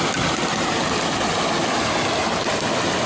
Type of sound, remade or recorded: recorded